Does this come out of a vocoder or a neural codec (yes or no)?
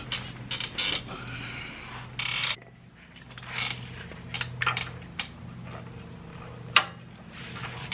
no